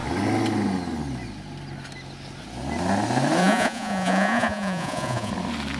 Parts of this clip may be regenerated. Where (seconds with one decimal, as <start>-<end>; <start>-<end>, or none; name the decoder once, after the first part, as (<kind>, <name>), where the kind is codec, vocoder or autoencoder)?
3.4-5.3 (vocoder, Vocos)